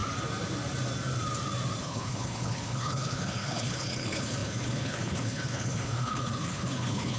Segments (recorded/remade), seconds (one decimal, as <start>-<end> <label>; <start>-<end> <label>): 0.0-1.8 recorded; 1.8-7.2 remade